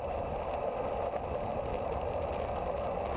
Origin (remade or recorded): recorded